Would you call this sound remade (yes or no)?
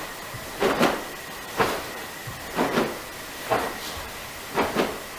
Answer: no